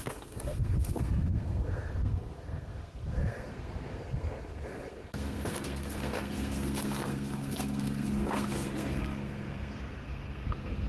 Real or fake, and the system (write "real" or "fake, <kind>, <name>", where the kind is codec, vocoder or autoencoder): fake, codec, SNAC